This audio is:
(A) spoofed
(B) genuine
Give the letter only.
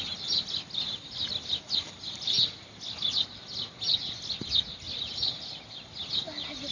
B